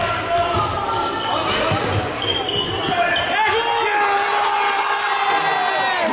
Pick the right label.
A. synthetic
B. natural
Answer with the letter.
B